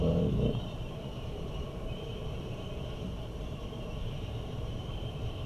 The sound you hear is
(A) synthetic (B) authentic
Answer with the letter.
A